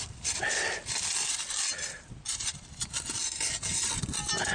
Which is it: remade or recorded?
recorded